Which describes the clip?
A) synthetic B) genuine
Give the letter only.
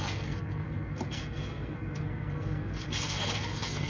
A